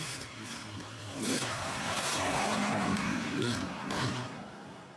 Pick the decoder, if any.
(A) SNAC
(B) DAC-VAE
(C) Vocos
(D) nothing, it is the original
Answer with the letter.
A